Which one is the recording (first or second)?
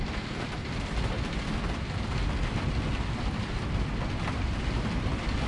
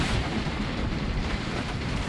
first